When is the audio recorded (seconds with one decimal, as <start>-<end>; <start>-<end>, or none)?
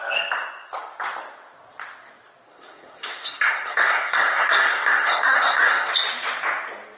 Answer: 0.0-2.5; 5.9-7.0